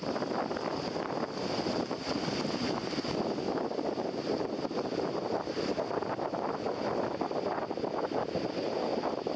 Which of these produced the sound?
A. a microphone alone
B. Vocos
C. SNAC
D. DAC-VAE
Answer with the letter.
A